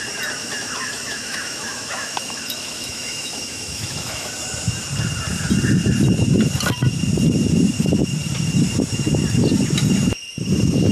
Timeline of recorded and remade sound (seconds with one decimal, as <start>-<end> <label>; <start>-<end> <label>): 0.0-0.4 recorded; 0.4-4.3 remade; 4.3-10.9 recorded